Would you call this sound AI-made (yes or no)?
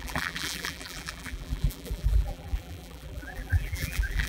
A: yes